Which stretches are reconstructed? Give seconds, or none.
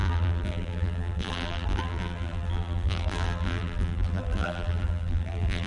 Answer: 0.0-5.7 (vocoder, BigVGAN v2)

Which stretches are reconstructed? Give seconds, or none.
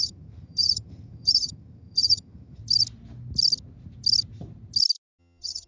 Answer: 0.0-2.6 (vocoder, HiFi-GAN); 5.2-5.7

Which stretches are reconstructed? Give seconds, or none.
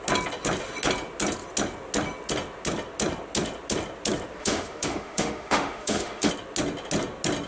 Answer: 4.4-6.3 (autoencoder, DAC-VAE)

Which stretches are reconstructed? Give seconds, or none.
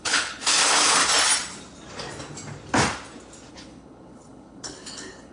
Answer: 0.0-1.0 (codec, HILCodec); 3.5-5.3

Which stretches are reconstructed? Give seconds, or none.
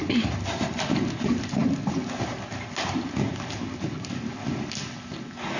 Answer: none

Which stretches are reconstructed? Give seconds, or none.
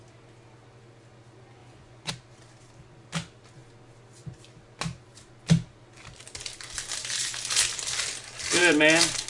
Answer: 1.6-2.1 (vocoder, Vocos)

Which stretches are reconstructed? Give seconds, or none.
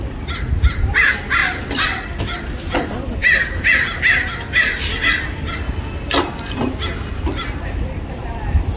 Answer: 0.0-1.4 (vocoder, BigVGAN v2); 2.2-3.2; 8.1-8.8